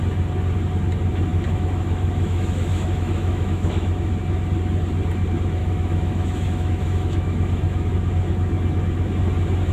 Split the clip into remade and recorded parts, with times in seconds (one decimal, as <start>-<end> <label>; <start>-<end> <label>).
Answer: 0.0-1.3 recorded; 1.3-4.1 remade; 4.1-5.6 recorded; 5.6-7.9 remade; 7.9-9.7 recorded